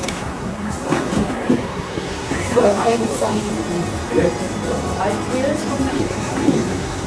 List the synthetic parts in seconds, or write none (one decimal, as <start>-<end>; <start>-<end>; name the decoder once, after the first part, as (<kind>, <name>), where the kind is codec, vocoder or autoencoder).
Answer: 0.0-3.5 (codec, SNAC); 5.9-7.1